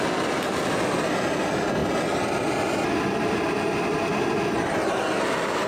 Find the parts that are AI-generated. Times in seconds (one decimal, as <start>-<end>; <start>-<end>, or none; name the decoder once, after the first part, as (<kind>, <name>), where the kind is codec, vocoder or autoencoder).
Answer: none